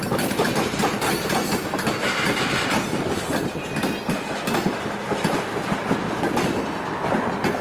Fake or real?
fake